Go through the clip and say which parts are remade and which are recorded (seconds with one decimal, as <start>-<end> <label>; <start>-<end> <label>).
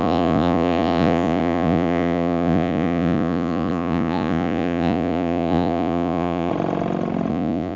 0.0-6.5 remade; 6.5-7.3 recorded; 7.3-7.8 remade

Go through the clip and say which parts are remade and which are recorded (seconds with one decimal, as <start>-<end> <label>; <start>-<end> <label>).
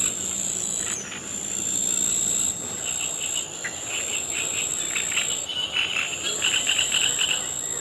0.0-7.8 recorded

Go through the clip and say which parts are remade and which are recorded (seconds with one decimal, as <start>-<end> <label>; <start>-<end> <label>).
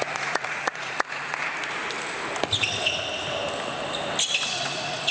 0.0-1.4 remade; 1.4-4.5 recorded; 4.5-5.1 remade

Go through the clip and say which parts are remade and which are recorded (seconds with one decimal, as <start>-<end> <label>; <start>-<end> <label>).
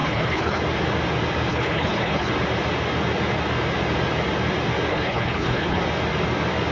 0.0-0.6 remade; 0.6-1.5 recorded; 1.5-2.3 remade; 2.3-4.9 recorded; 4.9-5.8 remade; 5.8-6.7 recorded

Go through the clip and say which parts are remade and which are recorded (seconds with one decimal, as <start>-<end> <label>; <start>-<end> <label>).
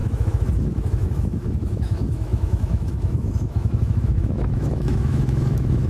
0.0-5.9 remade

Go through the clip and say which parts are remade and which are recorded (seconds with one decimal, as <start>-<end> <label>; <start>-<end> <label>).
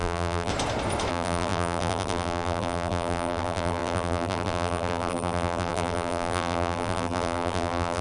0.0-0.5 remade; 0.5-1.1 recorded; 1.1-8.0 remade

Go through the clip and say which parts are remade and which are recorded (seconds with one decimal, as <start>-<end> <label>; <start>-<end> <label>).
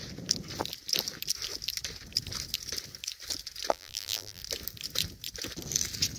0.0-3.7 recorded; 3.7-4.4 remade; 4.4-6.2 recorded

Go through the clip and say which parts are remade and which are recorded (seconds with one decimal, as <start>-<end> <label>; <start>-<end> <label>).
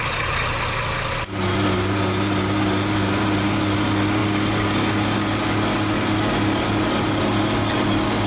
0.0-8.3 recorded